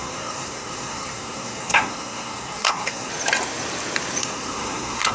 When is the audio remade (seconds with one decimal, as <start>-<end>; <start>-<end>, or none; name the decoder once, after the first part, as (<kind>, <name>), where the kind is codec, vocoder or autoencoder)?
0.0-3.1 (codec, SNAC); 4.2-5.1